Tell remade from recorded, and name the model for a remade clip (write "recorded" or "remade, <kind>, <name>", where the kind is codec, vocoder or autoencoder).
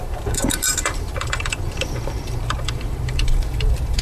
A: remade, vocoder, BigVGAN v2